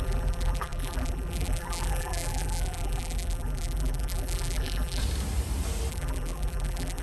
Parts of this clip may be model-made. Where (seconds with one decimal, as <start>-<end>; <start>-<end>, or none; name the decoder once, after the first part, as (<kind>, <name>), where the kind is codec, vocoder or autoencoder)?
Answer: 0.0-5.0 (vocoder, BigVGAN v2); 5.9-7.0